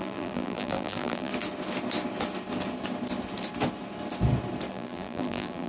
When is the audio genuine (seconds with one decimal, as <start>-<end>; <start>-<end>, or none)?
1.3-4.7